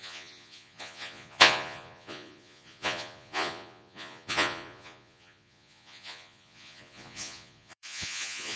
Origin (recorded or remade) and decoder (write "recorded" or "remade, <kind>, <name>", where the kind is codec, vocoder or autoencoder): remade, vocoder, Vocos